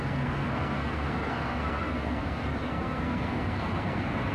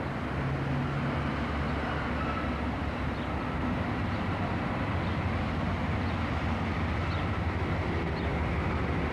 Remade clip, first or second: first